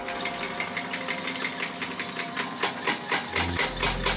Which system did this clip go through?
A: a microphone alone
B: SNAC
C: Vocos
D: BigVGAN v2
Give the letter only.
A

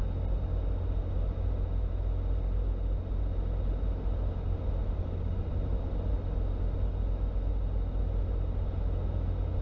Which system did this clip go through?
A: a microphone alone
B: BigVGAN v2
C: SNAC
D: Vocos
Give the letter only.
A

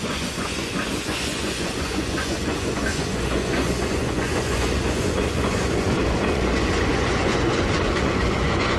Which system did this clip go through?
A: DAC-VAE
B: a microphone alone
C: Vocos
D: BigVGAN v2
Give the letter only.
C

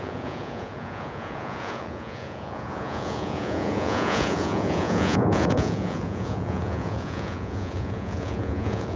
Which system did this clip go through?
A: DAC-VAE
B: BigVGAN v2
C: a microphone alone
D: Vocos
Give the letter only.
D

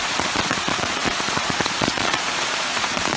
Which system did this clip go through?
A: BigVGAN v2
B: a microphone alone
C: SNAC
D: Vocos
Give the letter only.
D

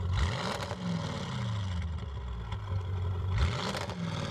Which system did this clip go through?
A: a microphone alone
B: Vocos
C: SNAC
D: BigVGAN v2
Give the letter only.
A